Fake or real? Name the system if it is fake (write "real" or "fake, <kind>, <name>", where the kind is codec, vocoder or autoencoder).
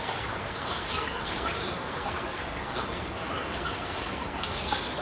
fake, codec, SNAC